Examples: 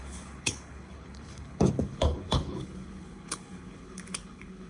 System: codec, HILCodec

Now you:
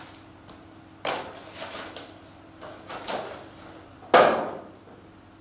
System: none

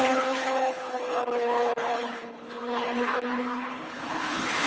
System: codec, HILCodec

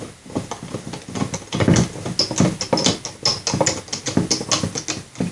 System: none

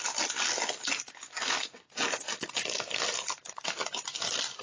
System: none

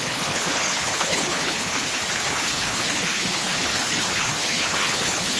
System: codec, HILCodec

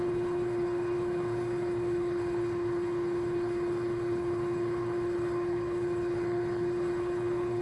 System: codec, HILCodec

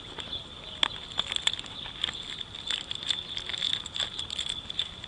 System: none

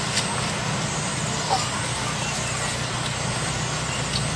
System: none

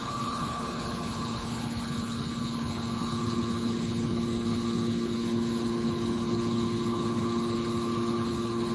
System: codec, HILCodec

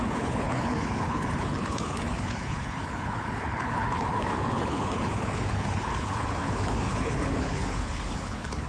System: codec, HILCodec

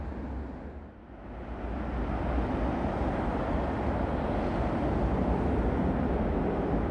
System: none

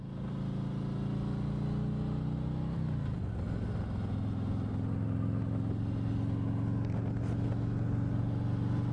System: none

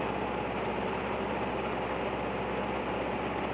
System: none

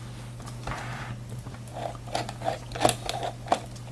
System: none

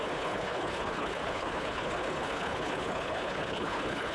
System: codec, HILCodec